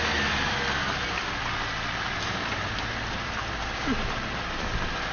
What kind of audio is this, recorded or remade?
recorded